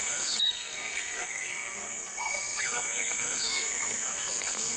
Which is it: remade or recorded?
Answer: remade